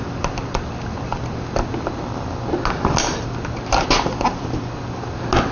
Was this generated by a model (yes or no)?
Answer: no